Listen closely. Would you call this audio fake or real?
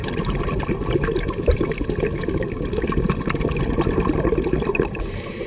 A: real